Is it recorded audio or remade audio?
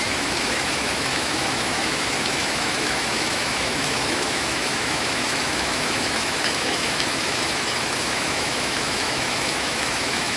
remade